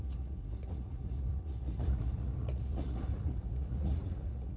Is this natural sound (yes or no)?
no